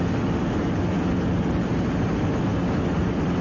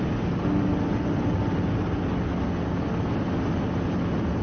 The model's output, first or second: first